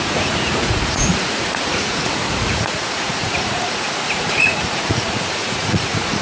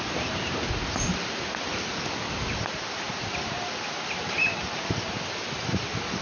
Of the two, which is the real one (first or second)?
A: second